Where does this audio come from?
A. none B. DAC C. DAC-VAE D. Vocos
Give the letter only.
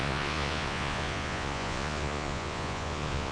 D